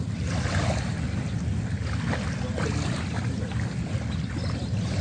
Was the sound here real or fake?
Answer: real